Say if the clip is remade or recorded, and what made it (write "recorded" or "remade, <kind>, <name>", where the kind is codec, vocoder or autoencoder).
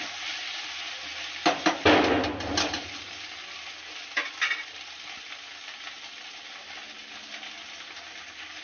recorded